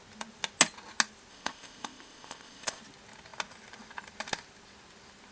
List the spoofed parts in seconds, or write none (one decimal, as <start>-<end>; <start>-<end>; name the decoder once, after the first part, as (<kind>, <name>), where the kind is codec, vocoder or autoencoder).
1.3-2.8 (codec, ZipCodec)